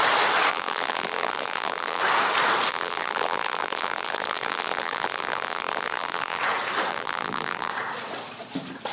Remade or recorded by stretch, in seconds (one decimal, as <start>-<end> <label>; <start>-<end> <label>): 0.0-0.5 recorded; 0.5-2.0 remade; 2.0-2.7 recorded; 2.7-6.4 remade; 6.4-6.9 recorded; 6.9-7.7 remade; 7.7-8.9 recorded